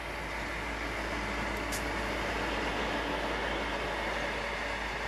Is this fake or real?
real